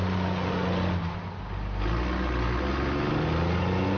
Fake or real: real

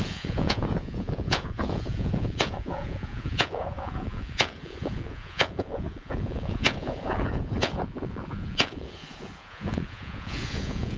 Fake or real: fake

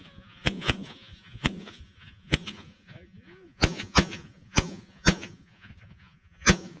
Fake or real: fake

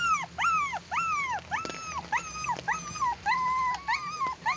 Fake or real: real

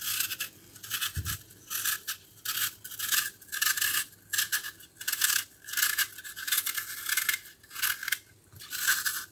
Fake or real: real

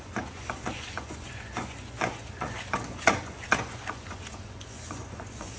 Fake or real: fake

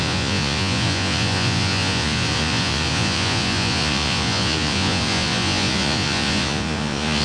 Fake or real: fake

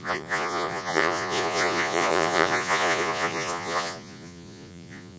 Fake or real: fake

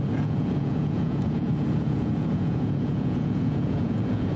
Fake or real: fake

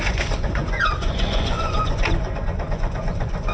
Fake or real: fake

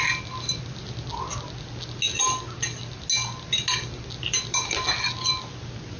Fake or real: real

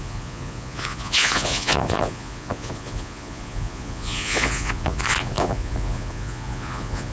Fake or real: fake